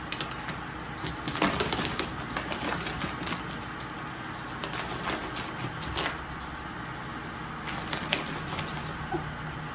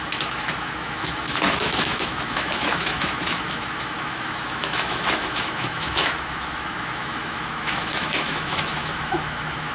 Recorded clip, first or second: first